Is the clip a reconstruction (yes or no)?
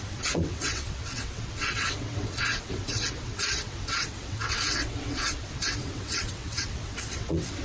yes